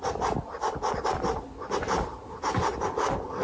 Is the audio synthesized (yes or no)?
no